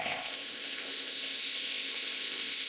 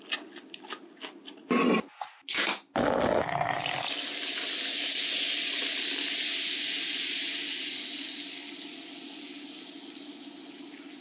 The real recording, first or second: second